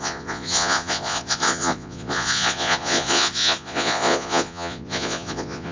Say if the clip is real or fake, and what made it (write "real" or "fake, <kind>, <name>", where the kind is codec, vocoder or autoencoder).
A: fake, vocoder, Vocos